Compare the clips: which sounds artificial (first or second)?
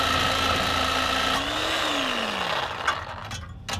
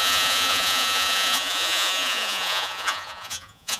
second